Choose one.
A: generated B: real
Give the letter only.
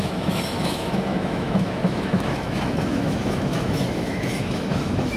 A